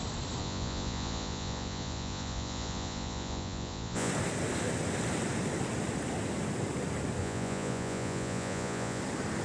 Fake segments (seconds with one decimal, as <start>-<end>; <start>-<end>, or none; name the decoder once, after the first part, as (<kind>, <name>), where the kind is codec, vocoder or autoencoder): 0.4-4.1 (vocoder, Vocos); 7.2-9.0